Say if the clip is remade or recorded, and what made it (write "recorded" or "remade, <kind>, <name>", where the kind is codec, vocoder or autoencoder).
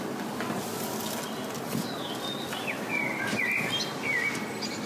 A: recorded